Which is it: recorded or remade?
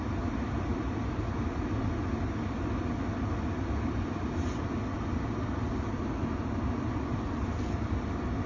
recorded